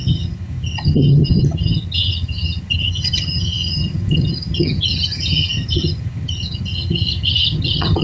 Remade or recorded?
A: remade